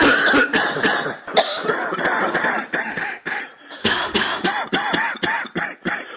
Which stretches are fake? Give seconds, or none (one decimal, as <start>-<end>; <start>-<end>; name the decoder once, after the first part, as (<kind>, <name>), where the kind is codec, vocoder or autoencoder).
2.9-3.4 (autoencoder, DAC-VAE); 3.8-4.5

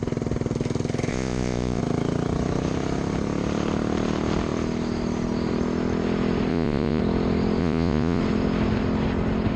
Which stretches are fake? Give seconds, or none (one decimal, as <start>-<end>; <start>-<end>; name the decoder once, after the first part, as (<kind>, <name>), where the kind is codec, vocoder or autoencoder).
1.1-1.8 (vocoder, Vocos); 6.5-7.0; 7.6-8.2

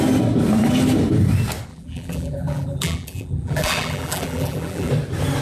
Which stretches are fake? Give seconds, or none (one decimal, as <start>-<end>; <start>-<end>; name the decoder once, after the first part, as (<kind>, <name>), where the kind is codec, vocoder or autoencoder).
1.7-4.9 (vocoder, BigVGAN v2)